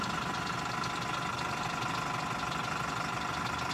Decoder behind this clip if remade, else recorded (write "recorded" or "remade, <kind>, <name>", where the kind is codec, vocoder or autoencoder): recorded